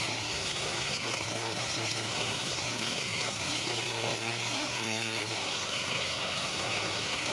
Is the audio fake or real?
fake